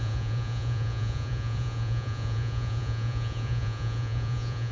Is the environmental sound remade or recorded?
remade